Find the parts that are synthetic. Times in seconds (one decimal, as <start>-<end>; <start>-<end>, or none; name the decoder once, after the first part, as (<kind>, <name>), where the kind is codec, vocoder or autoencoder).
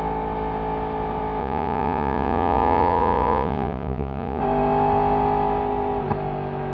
1.4-4.4 (vocoder, Vocos)